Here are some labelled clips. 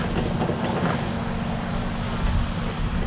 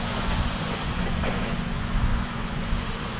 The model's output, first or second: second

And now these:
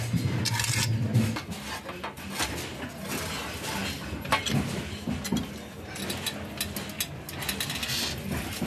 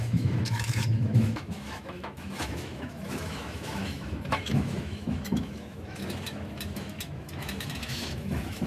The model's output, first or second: second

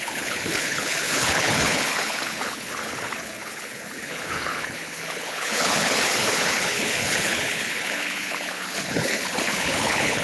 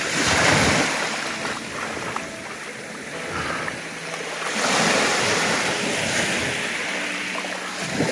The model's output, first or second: first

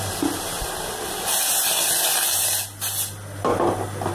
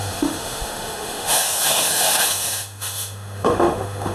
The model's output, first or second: second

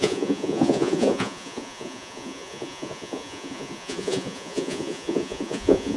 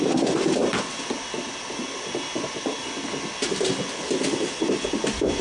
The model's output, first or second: first